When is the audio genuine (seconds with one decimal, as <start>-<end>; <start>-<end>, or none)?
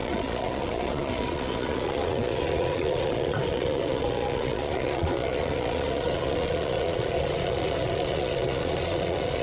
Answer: none